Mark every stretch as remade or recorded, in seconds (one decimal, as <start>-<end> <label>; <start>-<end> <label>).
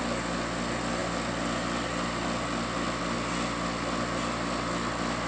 0.0-5.3 recorded